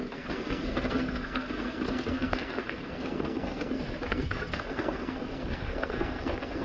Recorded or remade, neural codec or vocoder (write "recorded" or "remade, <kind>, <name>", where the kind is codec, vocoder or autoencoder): remade, codec, SNAC